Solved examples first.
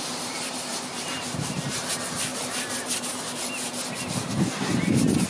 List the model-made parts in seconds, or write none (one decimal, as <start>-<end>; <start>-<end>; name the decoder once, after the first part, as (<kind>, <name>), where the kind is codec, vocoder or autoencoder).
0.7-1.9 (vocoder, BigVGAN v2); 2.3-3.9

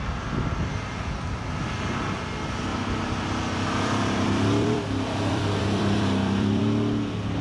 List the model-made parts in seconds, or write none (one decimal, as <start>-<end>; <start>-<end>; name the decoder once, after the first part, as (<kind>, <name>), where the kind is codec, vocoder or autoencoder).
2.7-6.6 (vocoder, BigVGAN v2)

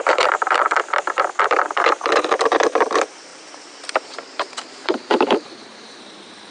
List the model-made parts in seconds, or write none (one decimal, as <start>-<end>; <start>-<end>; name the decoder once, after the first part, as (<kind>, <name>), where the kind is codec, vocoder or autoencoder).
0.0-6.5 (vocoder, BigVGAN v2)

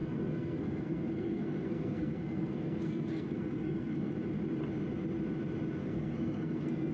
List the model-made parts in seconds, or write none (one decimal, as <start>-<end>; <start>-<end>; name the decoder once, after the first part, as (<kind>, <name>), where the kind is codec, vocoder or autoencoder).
0.0-4.1 (codec, SNAC); 5.8-6.9